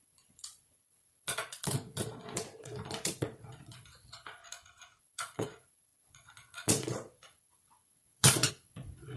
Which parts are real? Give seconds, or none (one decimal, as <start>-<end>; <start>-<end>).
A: 4.4-5.0